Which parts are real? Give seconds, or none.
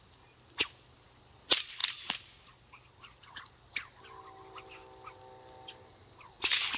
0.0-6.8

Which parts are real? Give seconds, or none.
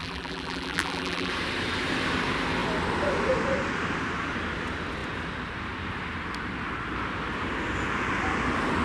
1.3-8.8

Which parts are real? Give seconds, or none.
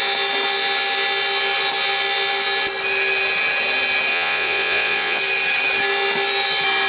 0.0-4.1; 5.2-6.9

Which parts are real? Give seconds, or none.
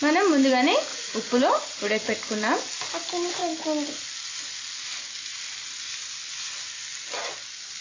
0.0-0.9; 2.0-7.8